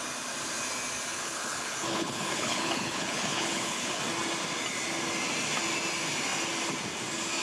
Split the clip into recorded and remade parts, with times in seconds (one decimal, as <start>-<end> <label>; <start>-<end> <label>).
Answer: 0.0-1.1 recorded; 1.1-4.0 remade; 4.0-7.4 recorded